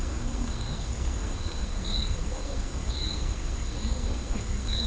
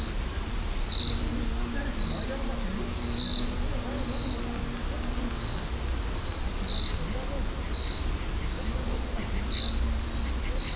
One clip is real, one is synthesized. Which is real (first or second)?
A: second